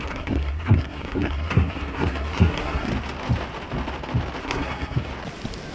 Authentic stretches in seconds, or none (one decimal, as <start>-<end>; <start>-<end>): 2.9-4.4; 5.1-5.7